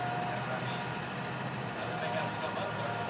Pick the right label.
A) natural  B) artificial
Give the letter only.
A